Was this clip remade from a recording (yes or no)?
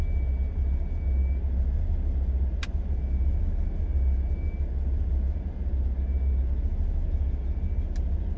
no